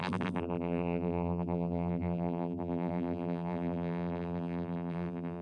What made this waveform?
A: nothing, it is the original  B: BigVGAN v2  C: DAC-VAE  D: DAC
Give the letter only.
B